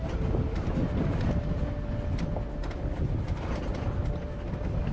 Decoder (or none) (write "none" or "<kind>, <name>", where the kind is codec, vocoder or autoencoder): none